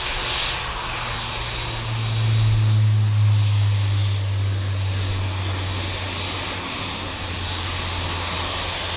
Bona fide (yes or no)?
yes